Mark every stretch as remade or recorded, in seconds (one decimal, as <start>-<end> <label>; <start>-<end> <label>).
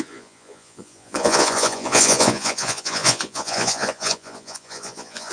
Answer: 0.0-5.3 remade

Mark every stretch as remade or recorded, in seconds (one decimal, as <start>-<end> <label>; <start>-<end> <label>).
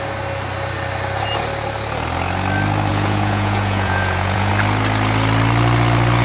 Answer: 0.0-2.9 recorded; 2.9-4.5 remade; 4.5-6.2 recorded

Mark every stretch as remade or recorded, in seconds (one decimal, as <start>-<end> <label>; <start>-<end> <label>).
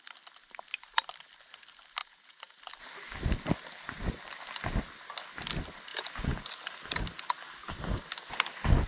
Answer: 0.0-2.0 recorded; 2.0-2.6 remade; 2.6-5.9 recorded; 5.9-6.5 remade; 6.5-8.9 recorded